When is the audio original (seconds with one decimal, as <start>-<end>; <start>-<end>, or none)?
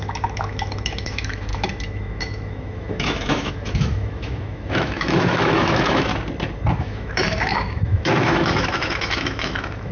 6.1-6.8